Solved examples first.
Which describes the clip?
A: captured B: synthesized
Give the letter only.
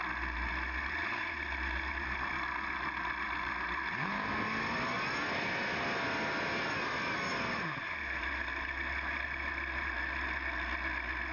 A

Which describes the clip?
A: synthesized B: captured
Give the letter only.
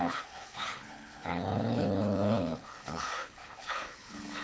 A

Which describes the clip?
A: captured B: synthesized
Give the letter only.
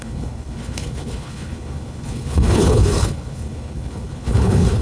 B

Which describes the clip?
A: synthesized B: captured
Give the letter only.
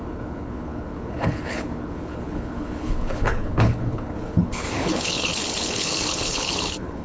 A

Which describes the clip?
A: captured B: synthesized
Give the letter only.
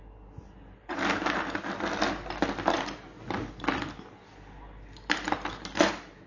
A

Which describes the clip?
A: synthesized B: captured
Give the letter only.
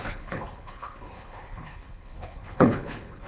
A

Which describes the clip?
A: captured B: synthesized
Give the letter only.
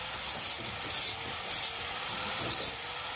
A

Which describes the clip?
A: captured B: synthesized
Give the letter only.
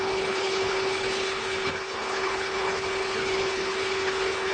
B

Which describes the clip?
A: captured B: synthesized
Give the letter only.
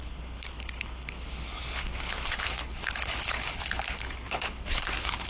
B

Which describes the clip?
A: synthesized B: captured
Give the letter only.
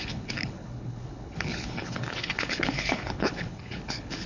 A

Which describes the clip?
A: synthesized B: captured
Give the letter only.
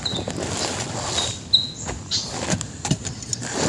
B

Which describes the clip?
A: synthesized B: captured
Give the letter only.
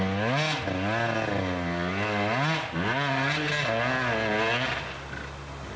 B